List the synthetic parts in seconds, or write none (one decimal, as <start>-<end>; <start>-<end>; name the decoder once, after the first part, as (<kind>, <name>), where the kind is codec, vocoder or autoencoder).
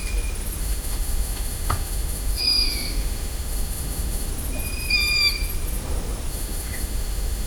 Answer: 0.6-4.3 (autoencoder, DAC-VAE); 6.3-7.5